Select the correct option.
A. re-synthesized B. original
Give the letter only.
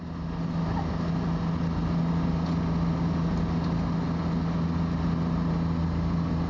B